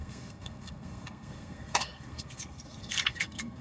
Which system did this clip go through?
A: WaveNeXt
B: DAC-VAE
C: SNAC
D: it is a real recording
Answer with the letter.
C